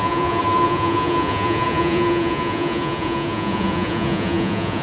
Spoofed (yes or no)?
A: yes